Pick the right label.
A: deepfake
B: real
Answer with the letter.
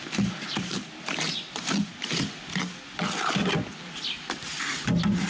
B